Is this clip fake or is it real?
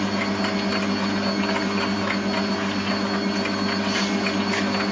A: real